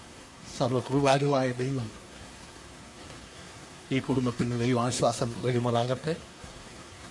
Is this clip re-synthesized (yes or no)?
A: yes